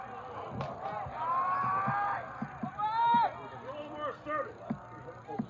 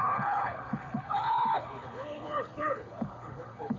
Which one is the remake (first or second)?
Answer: second